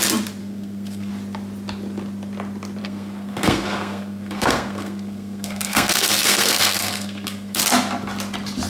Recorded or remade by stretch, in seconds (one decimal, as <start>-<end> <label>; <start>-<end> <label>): 0.0-0.4 recorded; 0.4-1.1 remade; 1.1-2.8 recorded; 2.8-7.6 remade; 7.6-8.7 recorded